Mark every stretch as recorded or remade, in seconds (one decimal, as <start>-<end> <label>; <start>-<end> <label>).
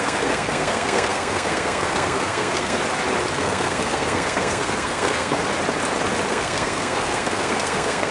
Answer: 0.0-2.8 remade; 2.8-3.3 recorded; 3.3-5.4 remade; 5.4-6.3 recorded; 6.3-8.1 remade